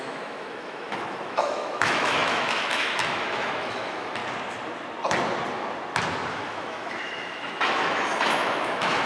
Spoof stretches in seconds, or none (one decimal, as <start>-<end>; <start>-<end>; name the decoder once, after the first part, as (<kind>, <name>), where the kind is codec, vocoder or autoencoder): 0.0-4.2 (autoencoder, DAC-VAE); 6.3-9.1